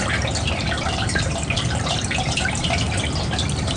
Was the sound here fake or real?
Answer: fake